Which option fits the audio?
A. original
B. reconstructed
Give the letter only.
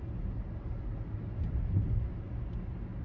A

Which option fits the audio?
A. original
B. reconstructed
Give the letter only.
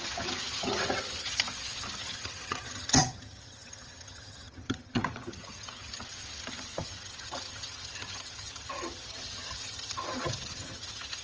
B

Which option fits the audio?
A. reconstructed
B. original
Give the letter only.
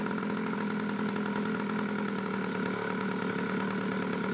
B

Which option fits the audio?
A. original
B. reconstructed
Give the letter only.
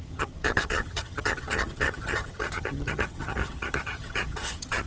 B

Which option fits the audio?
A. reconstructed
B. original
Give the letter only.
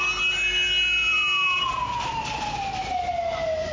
B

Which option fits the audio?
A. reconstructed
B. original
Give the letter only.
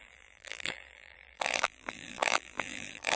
A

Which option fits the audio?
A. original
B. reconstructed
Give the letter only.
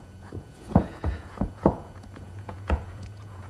B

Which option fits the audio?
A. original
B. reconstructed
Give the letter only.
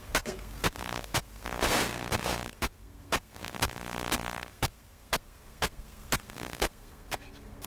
B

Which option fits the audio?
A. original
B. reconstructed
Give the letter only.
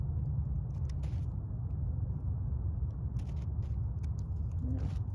A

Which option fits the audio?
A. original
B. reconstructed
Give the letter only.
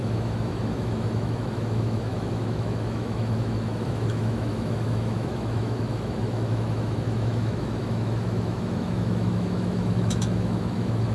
B